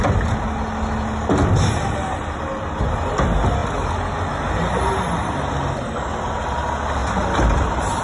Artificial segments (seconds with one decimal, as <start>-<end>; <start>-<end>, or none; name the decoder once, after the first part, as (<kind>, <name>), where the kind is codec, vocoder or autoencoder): none